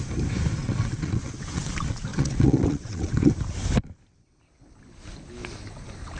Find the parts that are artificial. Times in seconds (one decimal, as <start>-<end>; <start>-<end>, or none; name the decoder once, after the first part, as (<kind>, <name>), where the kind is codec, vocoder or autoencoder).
0.6-1.7 (vocoder, WaveNeXt); 2.1-3.3